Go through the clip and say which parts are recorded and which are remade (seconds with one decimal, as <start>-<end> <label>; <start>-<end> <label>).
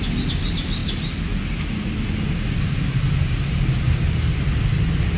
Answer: 0.0-5.2 recorded